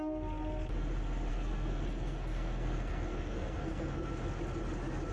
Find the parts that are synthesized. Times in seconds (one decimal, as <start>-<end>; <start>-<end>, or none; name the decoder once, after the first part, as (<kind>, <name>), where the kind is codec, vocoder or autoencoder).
1.3-4.1 (codec, SNAC)